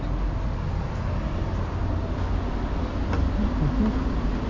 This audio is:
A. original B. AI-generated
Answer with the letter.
A